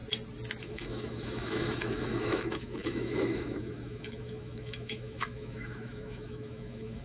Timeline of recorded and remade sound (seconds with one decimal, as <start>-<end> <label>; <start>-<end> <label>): 0.0-0.6 recorded; 0.6-7.0 remade